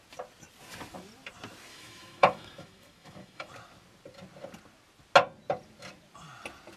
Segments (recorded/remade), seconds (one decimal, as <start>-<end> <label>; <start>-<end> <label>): 0.0-1.7 recorded; 1.7-3.5 remade; 3.5-6.8 recorded

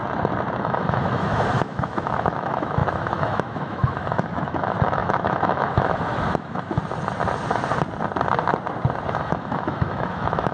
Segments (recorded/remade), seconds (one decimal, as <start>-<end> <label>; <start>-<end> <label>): 0.0-0.6 recorded; 0.6-6.8 remade; 6.8-9.1 recorded; 9.1-10.5 remade

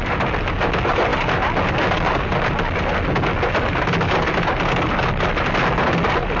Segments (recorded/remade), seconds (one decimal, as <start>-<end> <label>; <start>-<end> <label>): 0.0-6.4 recorded

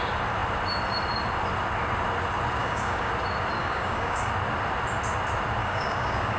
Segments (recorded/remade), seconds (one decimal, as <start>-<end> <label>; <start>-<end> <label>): 0.0-2.6 recorded; 2.6-3.1 remade; 3.1-3.6 recorded; 3.6-4.3 remade; 4.3-5.6 recorded; 5.6-6.4 remade